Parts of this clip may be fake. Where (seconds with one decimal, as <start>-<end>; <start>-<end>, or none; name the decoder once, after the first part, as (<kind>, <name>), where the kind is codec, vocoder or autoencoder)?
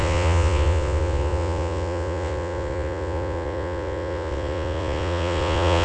0.0-5.8 (vocoder, Vocos)